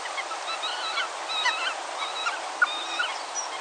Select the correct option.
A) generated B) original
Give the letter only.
B